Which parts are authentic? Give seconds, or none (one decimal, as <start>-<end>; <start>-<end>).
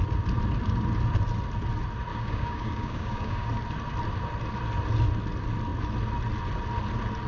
0.0-2.1; 3.5-7.3